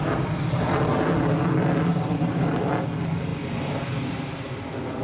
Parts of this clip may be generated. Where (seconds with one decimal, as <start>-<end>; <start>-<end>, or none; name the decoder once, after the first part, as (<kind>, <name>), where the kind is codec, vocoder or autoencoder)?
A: 1.9-2.6 (vocoder, BigVGAN v2)